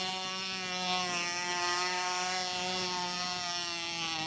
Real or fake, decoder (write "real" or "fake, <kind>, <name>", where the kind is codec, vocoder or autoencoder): real